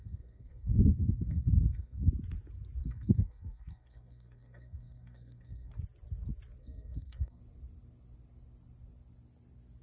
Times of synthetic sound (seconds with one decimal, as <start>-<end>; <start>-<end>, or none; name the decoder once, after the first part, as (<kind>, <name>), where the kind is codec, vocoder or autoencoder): 0.0-2.1 (codec, SNAC); 2.8-5.7; 6.6-7.4